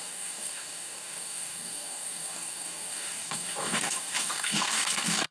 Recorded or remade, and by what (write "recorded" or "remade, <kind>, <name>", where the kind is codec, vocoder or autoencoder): remade, codec, DAC